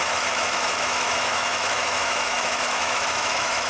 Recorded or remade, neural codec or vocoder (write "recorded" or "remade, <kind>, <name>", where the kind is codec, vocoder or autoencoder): remade, autoencoder, DAC-VAE